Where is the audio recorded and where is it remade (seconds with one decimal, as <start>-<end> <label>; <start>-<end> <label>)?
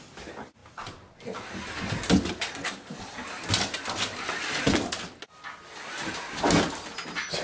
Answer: 0.0-7.4 recorded